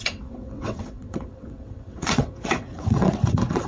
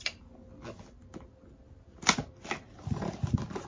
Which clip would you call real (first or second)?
second